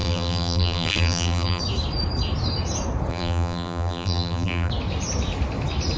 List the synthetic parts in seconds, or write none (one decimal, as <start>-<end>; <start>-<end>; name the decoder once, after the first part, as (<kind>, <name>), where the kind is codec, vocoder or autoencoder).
0.0-1.6 (vocoder, BigVGAN v2); 3.1-4.7